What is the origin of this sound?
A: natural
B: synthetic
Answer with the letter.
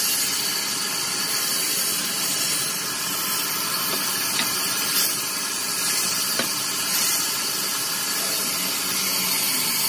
A